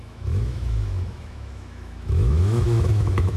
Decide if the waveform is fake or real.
fake